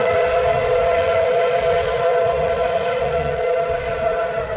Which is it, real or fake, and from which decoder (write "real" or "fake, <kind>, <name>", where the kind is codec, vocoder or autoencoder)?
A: fake, vocoder, Vocos